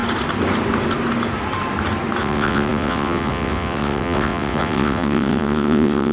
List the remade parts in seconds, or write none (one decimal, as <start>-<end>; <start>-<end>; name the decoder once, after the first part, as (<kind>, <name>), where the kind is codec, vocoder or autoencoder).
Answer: 2.2-6.1 (vocoder, WaveNeXt)